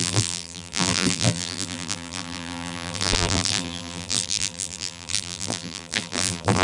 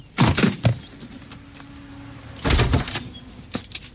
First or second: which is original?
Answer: second